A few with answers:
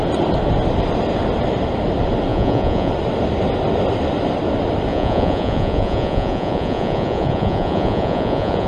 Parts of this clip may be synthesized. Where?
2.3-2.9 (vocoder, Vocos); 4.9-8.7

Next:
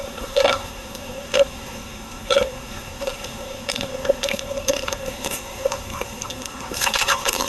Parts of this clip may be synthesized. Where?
0.0-7.5 (codec, SNAC)

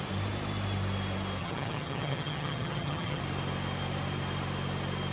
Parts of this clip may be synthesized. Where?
1.4-3.2 (vocoder, HiFi-GAN)

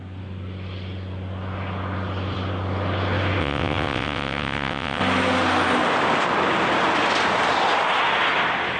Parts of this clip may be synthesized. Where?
3.4-5.0 (vocoder, WaveNeXt)

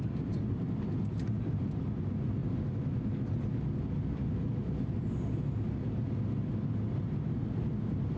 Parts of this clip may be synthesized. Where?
none

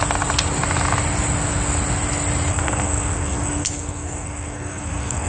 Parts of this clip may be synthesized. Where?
2.5-5.3 (codec, SNAC)